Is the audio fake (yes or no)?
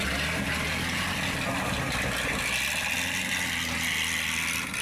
no